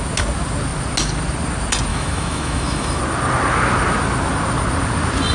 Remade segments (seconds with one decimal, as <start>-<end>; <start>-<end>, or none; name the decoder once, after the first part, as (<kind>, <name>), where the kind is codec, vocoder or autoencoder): 1.9-3.0 (autoencoder, DAC-VAE)